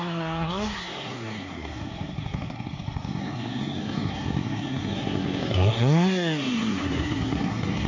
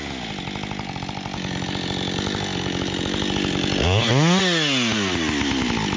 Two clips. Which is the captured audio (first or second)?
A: second